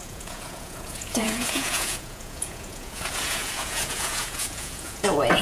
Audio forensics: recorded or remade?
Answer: remade